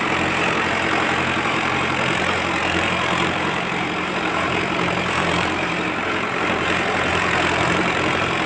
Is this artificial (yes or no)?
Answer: yes